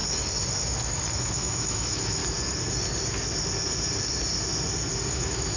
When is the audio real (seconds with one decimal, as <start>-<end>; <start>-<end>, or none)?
0.0-1.1; 2.2-5.1